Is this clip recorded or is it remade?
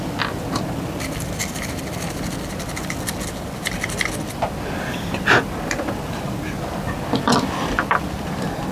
recorded